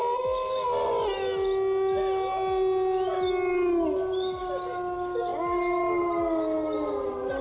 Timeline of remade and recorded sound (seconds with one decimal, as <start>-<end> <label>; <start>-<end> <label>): 0.0-7.4 recorded